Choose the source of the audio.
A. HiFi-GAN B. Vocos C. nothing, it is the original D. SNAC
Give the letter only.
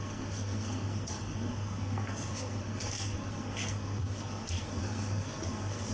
D